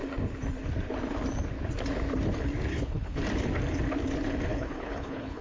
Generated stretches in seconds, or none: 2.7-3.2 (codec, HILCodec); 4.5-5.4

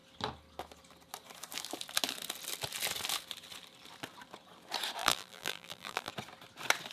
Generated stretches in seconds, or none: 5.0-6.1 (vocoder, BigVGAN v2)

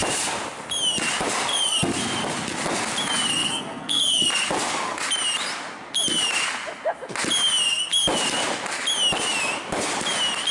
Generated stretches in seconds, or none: 3.4-4.0 (codec, SNAC)

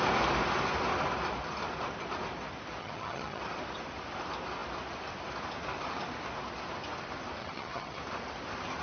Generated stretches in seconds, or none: 2.8-3.4 (vocoder, HiFi-GAN); 7.4-8.0